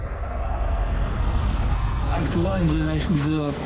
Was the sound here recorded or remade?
remade